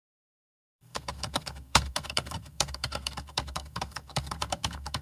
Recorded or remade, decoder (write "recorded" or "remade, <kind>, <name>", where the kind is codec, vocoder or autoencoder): remade, codec, SNAC